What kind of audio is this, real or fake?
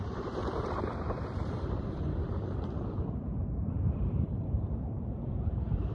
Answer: fake